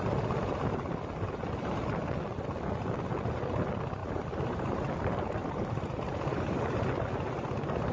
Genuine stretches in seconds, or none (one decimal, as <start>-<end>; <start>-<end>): 0.0-4.0; 4.9-5.4; 6.6-7.9